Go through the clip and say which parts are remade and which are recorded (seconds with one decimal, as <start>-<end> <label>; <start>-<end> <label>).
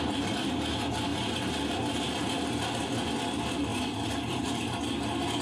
0.0-1.1 recorded; 1.1-2.6 remade; 2.6-3.7 recorded; 3.7-4.8 remade; 4.8-5.4 recorded